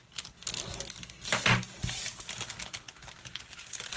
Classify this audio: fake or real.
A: real